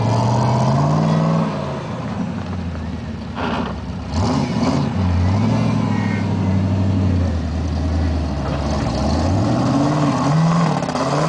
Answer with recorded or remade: recorded